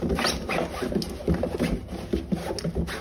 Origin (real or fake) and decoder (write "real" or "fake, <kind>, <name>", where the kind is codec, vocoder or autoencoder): real